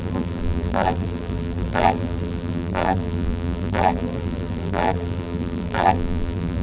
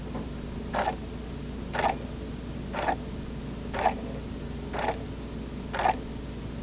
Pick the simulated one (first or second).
first